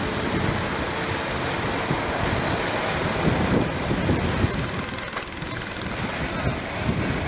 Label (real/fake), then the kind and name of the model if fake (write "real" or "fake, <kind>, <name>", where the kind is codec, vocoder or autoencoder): real